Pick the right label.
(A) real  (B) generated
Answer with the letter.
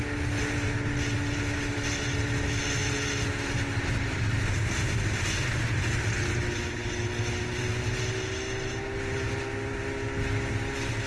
A